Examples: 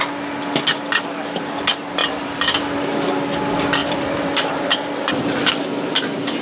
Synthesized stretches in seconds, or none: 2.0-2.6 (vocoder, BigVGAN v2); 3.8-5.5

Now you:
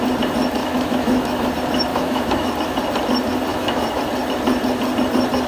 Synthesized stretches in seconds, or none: 0.6-1.5 (autoencoder, DAC-VAE); 1.9-2.5; 3.5-4.0

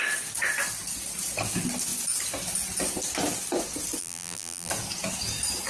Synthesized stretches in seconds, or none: 4.0-4.7 (vocoder, BigVGAN v2)

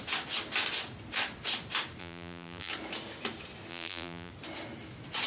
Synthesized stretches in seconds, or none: 2.0-2.7 (vocoder, BigVGAN v2); 3.7-4.3

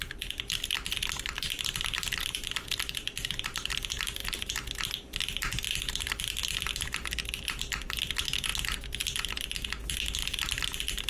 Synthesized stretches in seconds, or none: 0.0-4.2 (vocoder, BigVGAN v2); 5.7-6.4; 7.6-8.5

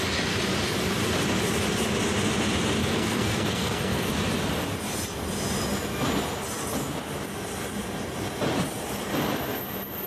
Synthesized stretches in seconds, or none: 2.8-4.1 (codec, SNAC)